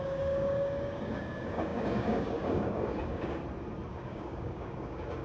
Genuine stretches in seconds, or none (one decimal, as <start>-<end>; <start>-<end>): 3.4-3.9